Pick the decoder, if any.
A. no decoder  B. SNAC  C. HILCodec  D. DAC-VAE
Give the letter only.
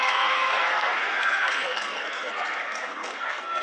B